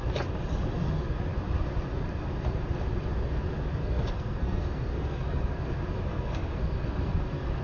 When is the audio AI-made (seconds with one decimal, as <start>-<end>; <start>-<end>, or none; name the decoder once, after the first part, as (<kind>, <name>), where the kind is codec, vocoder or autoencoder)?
3.8-5.6 (codec, SNAC); 6.1-7.6

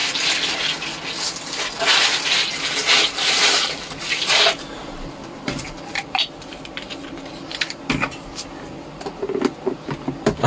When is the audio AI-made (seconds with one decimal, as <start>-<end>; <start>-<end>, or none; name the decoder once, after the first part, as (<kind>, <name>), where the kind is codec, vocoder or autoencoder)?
2.8-7.4 (vocoder, BigVGAN v2)

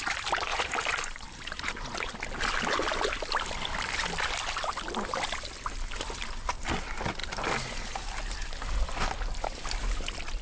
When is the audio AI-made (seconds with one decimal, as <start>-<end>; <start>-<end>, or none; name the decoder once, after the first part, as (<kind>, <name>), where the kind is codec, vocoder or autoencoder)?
0.5-1.8 (vocoder, BigVGAN v2)

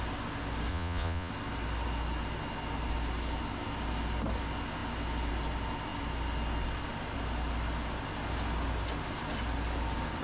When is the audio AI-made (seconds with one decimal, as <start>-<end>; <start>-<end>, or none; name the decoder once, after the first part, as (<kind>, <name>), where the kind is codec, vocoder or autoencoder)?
0.7-1.3 (vocoder, Vocos)

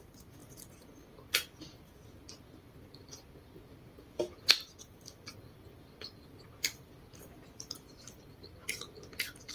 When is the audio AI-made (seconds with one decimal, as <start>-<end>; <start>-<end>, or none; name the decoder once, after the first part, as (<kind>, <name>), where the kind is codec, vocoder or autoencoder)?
none

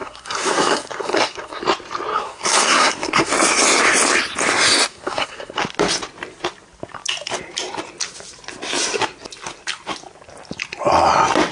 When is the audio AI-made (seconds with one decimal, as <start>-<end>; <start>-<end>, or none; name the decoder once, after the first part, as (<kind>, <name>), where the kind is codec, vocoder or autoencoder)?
0.0-1.6 (codec, SNAC); 2.1-3.3; 4.9-5.6

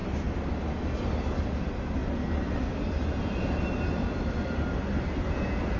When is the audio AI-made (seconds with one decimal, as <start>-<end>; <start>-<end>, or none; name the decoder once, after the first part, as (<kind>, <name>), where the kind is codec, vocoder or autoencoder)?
0.0-0.5 (vocoder, BigVGAN v2)